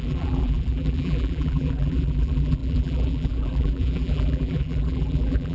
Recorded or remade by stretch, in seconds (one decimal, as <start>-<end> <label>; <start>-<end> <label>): 0.0-5.5 remade